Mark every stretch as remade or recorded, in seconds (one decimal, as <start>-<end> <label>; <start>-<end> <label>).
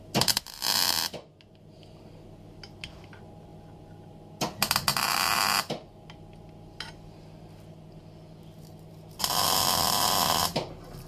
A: 0.0-11.1 recorded